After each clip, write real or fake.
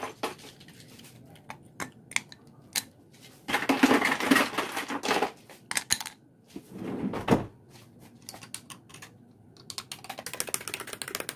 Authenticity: real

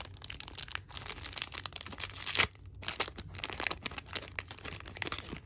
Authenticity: real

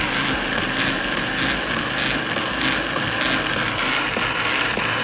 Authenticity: real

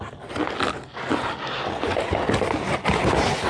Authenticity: real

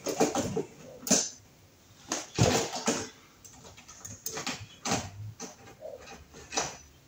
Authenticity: real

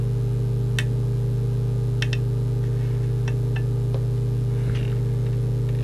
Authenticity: real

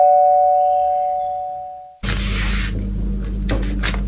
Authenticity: real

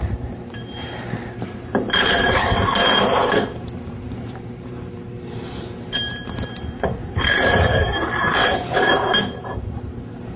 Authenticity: fake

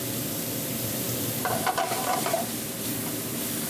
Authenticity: fake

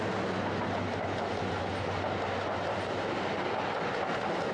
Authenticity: real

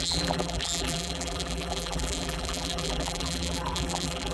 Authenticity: fake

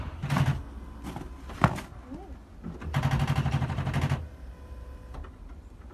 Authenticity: real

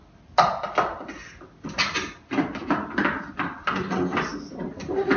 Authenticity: real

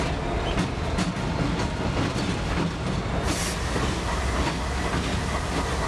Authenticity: real